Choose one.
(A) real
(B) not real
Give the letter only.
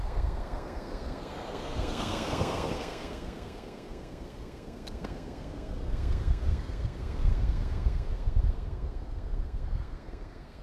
B